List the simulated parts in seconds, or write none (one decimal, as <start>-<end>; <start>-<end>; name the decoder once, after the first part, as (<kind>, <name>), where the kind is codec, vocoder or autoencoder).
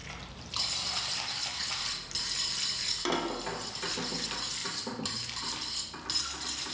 0.0-0.6 (vocoder, BigVGAN v2); 4.6-5.5